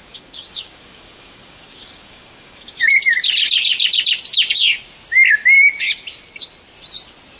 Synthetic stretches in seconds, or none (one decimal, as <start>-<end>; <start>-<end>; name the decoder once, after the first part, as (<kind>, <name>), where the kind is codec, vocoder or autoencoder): 0.0-2.9 (codec, DAC)

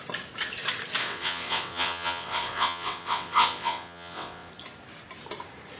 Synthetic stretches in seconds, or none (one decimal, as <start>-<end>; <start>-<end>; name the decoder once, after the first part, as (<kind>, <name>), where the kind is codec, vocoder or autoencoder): 1.0-4.5 (vocoder, WaveNeXt)

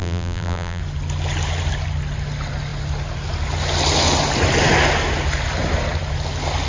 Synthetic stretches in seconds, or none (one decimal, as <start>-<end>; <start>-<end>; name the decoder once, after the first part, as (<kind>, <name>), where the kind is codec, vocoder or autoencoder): 0.0-0.8 (vocoder, BigVGAN v2)

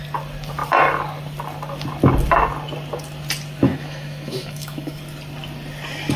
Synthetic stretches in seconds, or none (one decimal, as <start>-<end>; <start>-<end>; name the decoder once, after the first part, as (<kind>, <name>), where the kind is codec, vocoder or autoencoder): 3.6-5.0 (autoencoder, DAC-VAE)

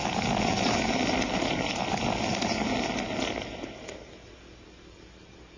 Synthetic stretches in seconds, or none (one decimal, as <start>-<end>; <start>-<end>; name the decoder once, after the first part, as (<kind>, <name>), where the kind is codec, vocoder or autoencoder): none

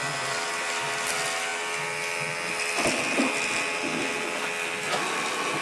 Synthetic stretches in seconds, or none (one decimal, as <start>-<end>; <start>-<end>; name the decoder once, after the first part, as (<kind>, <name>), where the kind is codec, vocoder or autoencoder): none

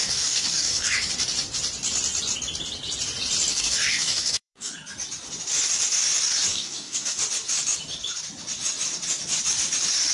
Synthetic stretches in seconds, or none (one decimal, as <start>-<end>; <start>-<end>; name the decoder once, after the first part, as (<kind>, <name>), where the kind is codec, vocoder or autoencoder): 0.0-1.1 (codec, DAC); 3.5-4.7; 6.5-7.2

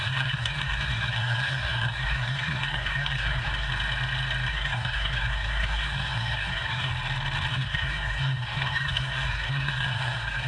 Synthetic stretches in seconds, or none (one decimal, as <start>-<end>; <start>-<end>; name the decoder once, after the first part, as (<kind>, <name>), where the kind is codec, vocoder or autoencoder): 0.0-3.7 (codec, SNAC); 4.5-6.9; 7.5-10.5